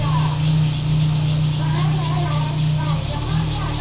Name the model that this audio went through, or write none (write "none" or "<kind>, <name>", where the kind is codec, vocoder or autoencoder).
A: none